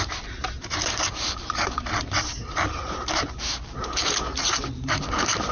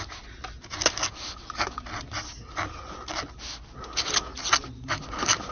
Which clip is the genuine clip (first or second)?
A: second